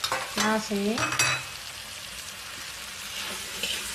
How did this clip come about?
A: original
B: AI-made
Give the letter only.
A